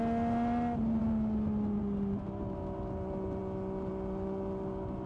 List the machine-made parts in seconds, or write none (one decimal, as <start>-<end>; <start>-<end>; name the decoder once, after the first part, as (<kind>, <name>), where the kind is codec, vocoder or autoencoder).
none